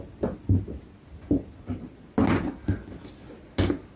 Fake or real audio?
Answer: real